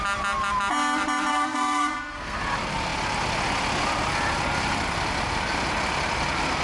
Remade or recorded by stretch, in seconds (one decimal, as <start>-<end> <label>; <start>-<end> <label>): 0.0-1.3 recorded; 1.3-2.4 remade; 2.4-6.6 recorded